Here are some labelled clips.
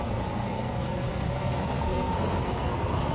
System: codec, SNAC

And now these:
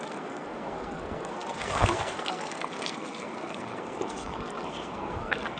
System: codec, SNAC